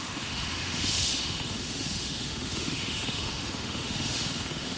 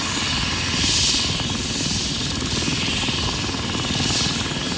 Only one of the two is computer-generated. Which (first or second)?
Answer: first